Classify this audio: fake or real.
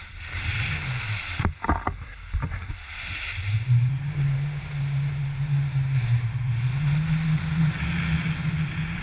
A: real